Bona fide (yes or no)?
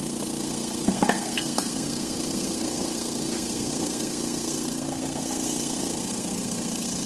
no